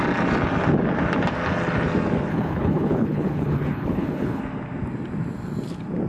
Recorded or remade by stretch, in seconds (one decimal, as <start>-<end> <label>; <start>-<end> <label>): 0.0-2.3 recorded; 2.3-4.4 remade; 4.4-6.1 recorded